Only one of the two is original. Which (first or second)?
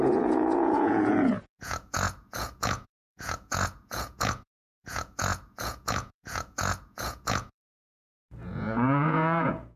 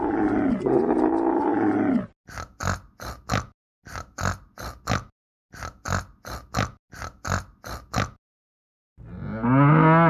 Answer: second